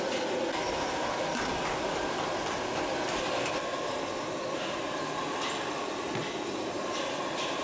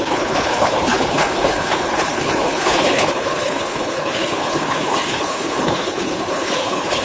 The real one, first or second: first